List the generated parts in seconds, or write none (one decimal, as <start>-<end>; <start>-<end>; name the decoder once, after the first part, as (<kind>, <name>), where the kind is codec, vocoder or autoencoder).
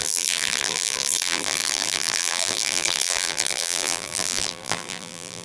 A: 0.0-5.4 (vocoder, BigVGAN v2)